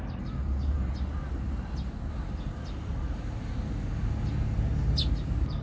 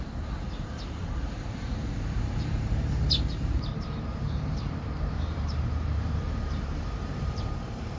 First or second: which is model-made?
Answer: second